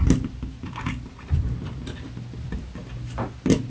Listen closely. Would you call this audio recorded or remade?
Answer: recorded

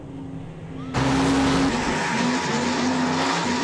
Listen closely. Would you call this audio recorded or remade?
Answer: recorded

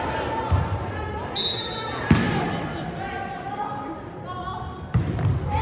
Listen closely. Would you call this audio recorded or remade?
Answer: recorded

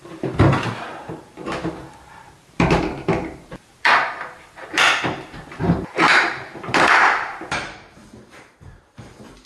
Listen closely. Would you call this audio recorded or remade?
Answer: remade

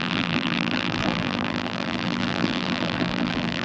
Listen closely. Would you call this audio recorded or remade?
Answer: remade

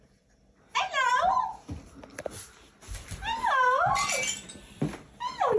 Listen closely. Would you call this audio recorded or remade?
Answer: remade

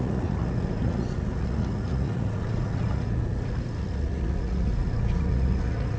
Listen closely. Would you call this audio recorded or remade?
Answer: remade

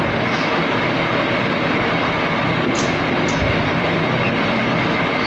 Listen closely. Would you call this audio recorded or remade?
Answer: recorded